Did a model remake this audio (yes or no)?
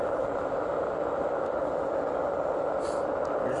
no